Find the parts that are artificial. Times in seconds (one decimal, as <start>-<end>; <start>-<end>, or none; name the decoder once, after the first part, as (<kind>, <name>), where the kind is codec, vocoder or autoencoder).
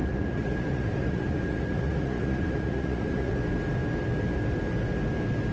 0.0-3.3 (vocoder, Vocos)